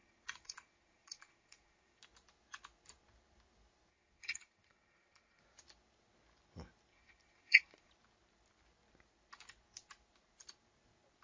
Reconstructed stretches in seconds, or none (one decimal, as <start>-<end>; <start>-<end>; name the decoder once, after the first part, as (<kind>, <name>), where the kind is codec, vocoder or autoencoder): 0.0-2.0 (vocoder, Vocos); 3.9-5.4; 6.9-7.9